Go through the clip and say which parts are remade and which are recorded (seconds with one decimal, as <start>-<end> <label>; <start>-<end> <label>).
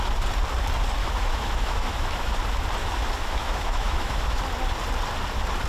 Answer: 0.0-1.0 recorded; 1.0-2.3 remade; 2.3-2.8 recorded; 2.8-4.4 remade; 4.4-5.7 recorded